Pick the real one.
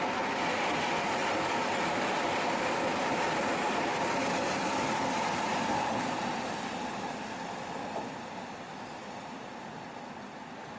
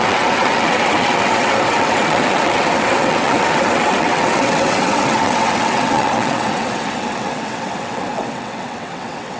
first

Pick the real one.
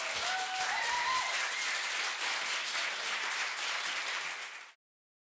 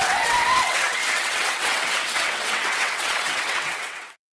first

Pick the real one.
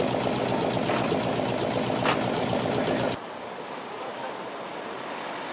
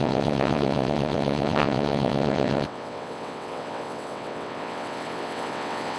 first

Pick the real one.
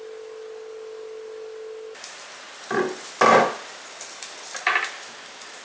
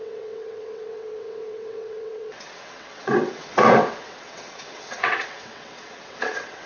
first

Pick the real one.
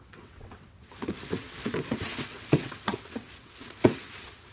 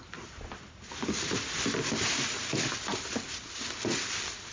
second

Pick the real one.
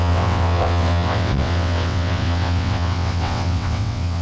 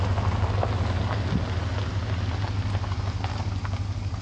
second